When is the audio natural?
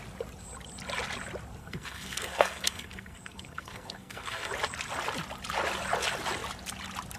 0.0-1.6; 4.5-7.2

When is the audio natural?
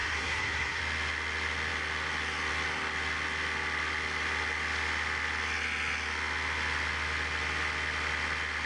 0.8-8.7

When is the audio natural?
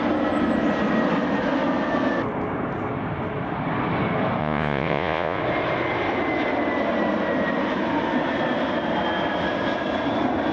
0.0-4.4; 5.4-10.5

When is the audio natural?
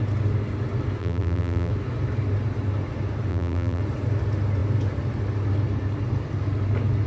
0.0-1.0; 1.7-3.3; 3.8-7.1